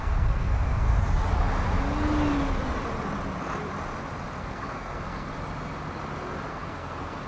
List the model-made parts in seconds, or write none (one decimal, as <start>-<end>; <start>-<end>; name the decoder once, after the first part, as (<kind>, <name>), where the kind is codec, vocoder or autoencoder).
0.0-0.9 (codec, SNAC); 4.4-5.3; 6.5-7.3